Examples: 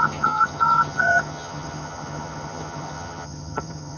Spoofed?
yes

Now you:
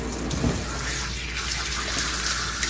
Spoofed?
no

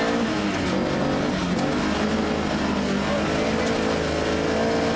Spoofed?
no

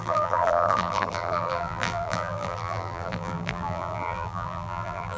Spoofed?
yes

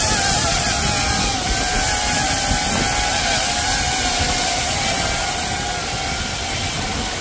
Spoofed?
yes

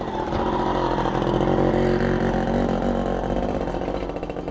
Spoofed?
no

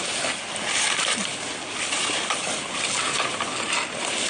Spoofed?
no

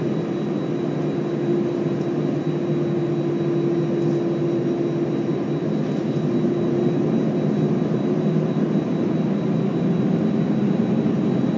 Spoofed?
no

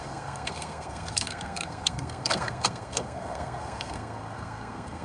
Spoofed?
yes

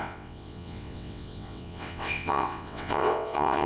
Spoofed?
yes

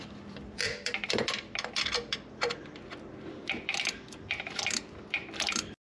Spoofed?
yes